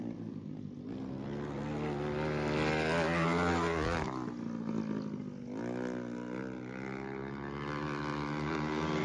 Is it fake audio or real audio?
real